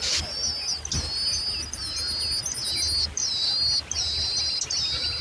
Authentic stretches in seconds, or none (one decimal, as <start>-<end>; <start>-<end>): 0.0-5.2